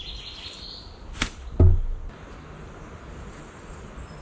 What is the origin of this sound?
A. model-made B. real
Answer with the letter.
B